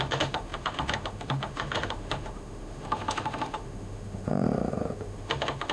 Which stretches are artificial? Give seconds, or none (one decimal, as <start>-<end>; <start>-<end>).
0.0-5.7